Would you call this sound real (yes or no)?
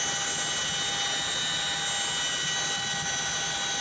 yes